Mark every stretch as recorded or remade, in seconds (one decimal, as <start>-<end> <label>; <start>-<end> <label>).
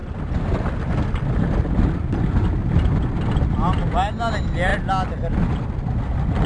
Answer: 0.0-6.5 recorded